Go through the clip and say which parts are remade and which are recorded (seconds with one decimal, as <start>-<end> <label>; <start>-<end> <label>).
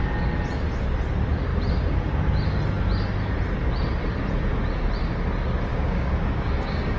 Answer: 0.0-5.7 recorded; 5.7-7.0 remade